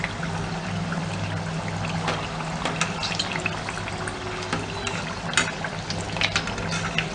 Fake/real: real